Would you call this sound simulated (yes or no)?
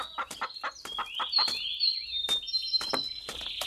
no